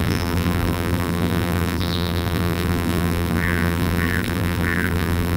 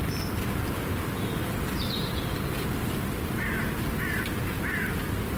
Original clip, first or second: second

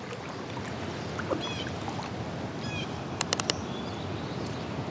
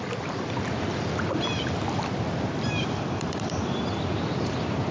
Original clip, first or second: first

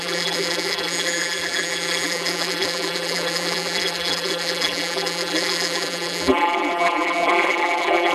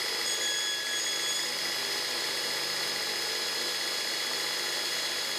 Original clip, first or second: second